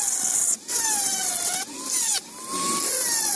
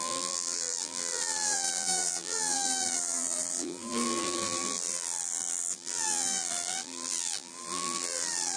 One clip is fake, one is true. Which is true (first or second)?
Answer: first